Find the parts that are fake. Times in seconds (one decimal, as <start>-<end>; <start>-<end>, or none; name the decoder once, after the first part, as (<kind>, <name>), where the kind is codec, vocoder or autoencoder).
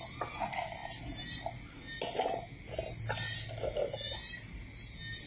none